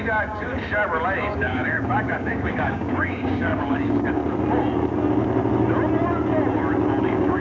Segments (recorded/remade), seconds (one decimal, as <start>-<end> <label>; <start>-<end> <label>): 0.0-0.5 remade; 0.5-1.2 recorded; 1.2-4.2 remade; 4.2-7.0 recorded; 7.0-7.4 remade